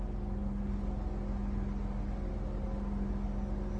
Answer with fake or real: real